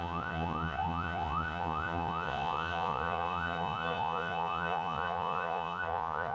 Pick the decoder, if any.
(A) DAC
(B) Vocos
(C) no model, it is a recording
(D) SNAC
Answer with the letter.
B